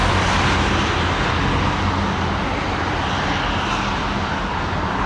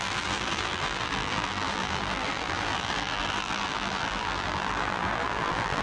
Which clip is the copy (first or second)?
second